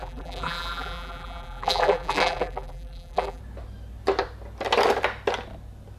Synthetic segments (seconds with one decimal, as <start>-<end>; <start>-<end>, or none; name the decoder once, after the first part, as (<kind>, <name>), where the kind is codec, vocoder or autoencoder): 0.0-3.4 (vocoder, BigVGAN v2)